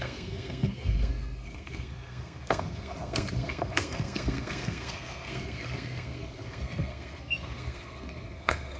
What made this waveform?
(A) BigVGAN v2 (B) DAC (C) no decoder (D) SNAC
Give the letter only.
D